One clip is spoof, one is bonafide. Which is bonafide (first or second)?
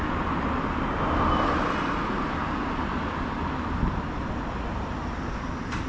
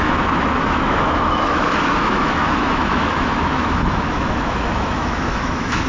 first